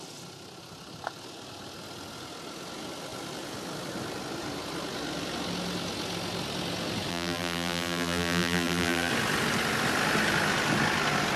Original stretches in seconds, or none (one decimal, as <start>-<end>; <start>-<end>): 0.0-7.1; 9.1-11.4